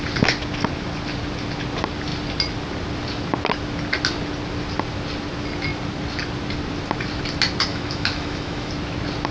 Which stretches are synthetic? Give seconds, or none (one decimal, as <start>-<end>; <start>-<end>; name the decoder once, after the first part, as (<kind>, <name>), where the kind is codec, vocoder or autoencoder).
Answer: 7.7-8.7 (autoencoder, DAC-VAE)